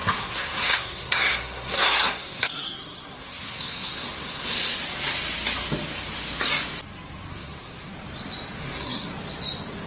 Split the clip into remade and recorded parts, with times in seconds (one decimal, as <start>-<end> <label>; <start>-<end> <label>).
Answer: 0.0-4.8 remade; 4.8-7.3 recorded; 7.3-7.9 remade; 7.9-8.6 recorded; 8.6-9.1 remade; 9.1-9.9 recorded